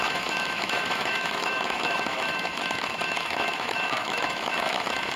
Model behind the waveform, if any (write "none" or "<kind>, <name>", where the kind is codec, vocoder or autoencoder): autoencoder, DAC-VAE